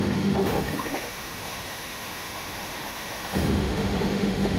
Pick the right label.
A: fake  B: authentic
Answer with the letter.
A